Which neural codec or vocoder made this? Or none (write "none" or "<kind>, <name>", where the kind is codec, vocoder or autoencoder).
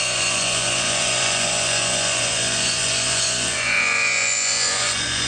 vocoder, Vocos